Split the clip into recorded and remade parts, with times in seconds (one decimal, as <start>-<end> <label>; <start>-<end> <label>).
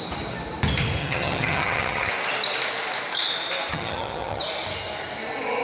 0.0-1.0 recorded; 1.0-2.1 remade; 2.1-3.7 recorded; 3.7-4.4 remade; 4.4-5.6 recorded